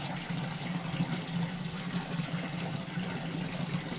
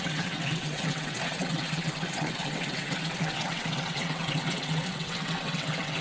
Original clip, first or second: first